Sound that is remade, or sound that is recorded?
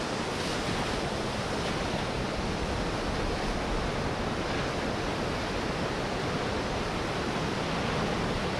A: recorded